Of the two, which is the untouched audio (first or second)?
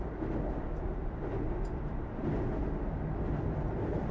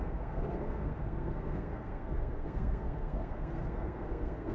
first